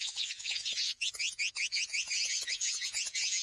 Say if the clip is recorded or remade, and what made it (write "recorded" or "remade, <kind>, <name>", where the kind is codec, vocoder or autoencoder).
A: remade, vocoder, Vocos